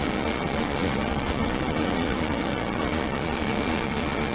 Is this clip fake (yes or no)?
yes